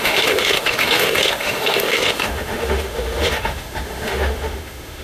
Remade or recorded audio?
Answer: remade